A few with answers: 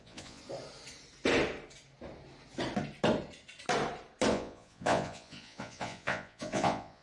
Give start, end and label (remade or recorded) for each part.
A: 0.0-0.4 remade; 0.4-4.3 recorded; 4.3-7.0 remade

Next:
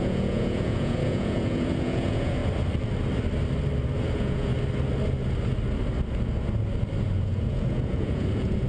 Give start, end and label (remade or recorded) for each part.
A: 0.0-2.4 remade; 2.4-4.0 recorded; 4.0-4.5 remade; 4.5-7.0 recorded; 7.0-8.7 remade

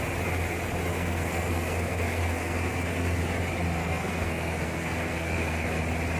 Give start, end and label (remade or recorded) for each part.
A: 0.0-0.9 recorded; 0.9-3.2 remade; 3.2-3.8 recorded; 3.8-5.8 remade; 5.8-6.2 recorded